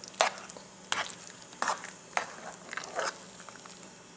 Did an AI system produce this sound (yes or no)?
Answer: no